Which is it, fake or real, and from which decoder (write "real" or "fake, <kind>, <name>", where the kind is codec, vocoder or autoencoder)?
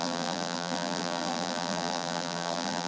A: fake, vocoder, BigVGAN v2